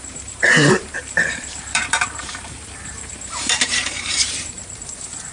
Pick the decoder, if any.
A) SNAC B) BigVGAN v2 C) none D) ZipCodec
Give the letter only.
B